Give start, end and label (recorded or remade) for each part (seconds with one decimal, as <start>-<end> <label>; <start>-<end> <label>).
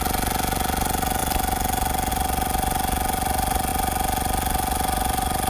0.0-5.5 recorded